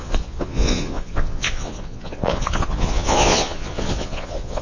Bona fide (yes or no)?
no